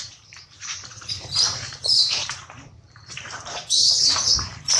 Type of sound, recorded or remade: remade